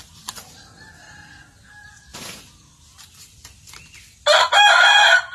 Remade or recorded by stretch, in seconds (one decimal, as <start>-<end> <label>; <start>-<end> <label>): 0.0-5.3 recorded